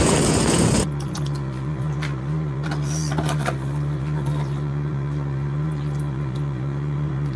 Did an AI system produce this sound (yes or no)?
yes